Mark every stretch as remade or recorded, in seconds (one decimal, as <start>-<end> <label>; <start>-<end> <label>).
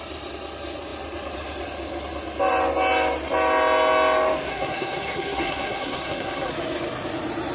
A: 0.0-4.5 recorded; 4.5-6.5 remade; 6.5-7.5 recorded